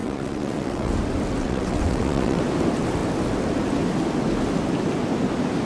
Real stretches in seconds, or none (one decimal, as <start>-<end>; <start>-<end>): 0.9-1.4; 2.4-5.6